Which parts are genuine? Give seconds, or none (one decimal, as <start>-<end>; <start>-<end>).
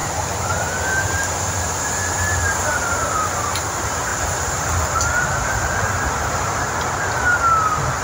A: 3.6-4.1; 4.7-8.0